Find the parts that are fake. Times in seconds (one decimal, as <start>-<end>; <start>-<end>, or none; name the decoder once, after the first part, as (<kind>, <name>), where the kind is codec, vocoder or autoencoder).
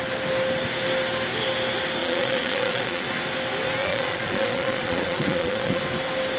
2.0-3.1 (vocoder, Vocos); 3.8-5.8